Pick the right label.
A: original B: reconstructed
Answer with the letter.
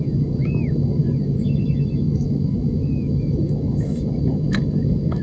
B